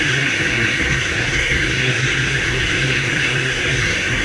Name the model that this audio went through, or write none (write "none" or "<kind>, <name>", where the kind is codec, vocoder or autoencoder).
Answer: codec, SNAC